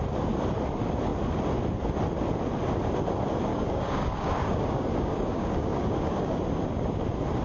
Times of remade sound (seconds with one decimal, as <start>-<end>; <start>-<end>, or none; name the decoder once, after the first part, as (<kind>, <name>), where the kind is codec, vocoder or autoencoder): 3.5-6.4 (codec, DAC)